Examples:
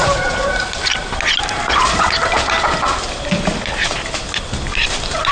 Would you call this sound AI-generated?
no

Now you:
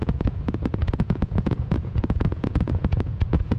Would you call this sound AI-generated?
yes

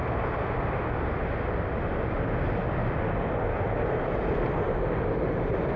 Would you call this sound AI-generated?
no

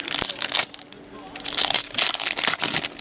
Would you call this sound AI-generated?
no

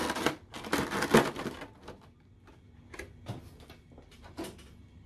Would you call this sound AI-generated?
no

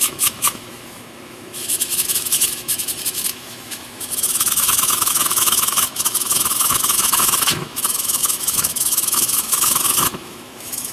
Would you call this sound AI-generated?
yes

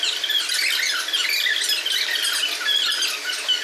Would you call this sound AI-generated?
no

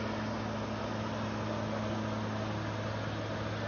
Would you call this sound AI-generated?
no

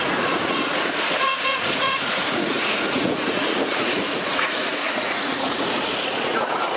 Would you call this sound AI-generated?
yes